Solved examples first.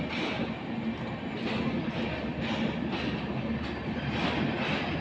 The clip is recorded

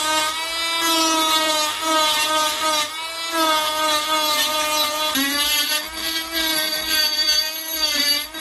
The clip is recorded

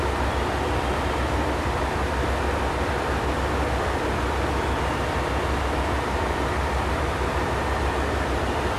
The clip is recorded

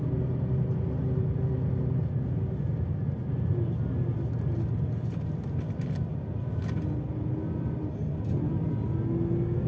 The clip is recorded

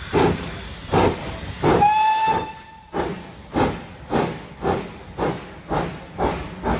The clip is recorded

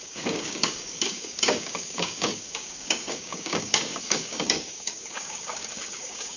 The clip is remade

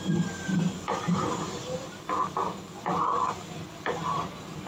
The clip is recorded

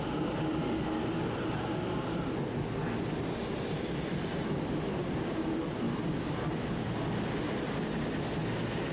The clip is recorded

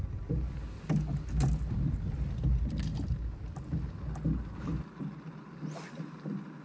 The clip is recorded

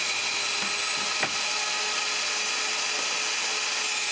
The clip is recorded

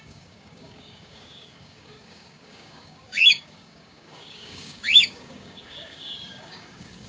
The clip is remade